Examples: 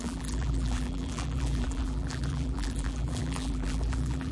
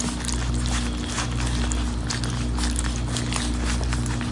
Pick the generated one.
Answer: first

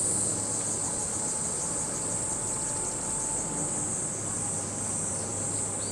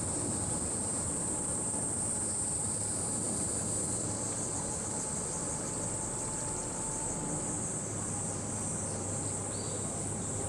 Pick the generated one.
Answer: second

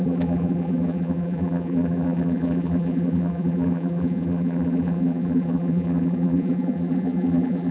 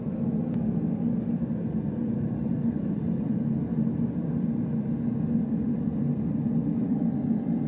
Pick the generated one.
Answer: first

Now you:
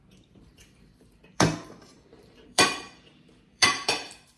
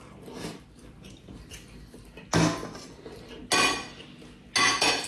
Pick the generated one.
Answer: first